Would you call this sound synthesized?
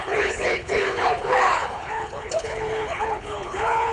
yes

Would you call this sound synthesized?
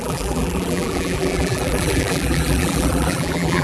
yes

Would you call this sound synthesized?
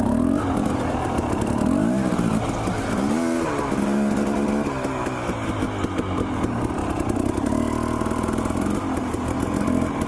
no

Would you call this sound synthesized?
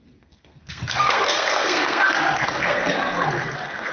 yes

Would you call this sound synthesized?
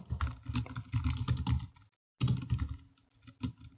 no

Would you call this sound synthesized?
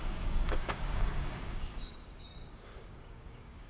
yes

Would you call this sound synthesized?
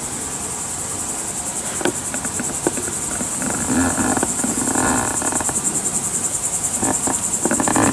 no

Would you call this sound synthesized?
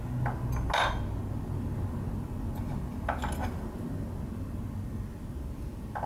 no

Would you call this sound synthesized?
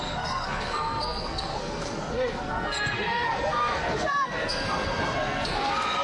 yes